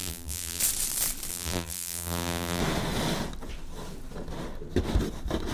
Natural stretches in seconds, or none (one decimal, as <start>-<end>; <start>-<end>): 0.6-1.3; 2.6-5.5